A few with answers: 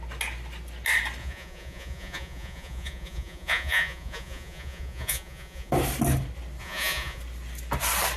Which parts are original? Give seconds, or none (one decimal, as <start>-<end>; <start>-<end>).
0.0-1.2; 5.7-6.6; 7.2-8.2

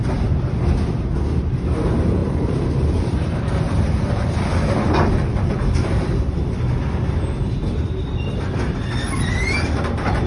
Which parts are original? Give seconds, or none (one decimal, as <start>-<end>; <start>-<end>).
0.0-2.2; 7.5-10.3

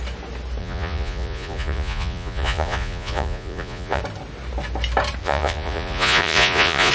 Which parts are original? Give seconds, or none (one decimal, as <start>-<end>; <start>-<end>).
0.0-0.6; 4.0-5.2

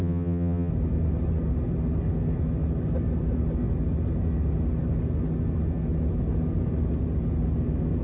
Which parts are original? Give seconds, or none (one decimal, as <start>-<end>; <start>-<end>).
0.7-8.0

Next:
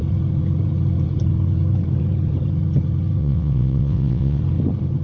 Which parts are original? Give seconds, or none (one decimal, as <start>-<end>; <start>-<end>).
0.0-3.2; 4.4-5.0

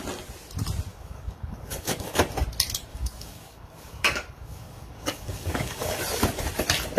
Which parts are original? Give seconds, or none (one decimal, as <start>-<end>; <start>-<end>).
0.0-0.9; 2.2-2.9; 6.0-7.0